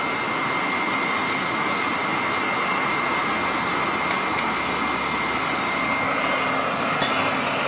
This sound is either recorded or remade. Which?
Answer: recorded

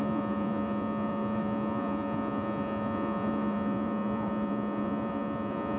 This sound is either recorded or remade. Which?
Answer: remade